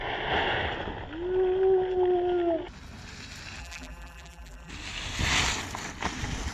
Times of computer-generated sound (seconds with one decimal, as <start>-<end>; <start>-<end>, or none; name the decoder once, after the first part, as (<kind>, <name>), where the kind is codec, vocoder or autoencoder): 3.6-4.7 (vocoder, BigVGAN v2)